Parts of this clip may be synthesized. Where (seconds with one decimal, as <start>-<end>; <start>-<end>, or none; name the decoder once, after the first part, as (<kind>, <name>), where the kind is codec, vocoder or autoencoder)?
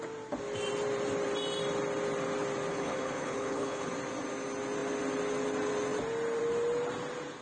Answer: 2.7-3.9 (codec, HILCodec)